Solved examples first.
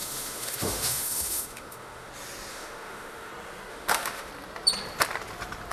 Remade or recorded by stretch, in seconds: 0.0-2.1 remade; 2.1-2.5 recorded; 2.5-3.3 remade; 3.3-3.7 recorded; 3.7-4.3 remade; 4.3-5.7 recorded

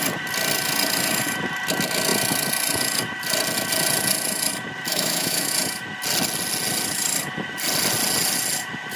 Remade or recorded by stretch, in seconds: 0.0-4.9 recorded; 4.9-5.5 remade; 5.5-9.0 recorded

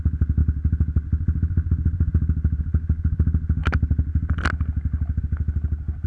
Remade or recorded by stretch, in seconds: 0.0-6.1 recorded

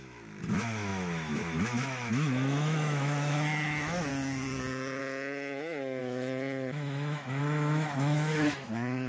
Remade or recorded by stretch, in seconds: 0.0-4.1 remade; 4.1-5.0 recorded; 5.0-9.1 remade

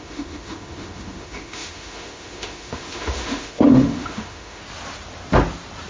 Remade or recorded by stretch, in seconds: 0.0-4.6 remade; 4.6-5.9 recorded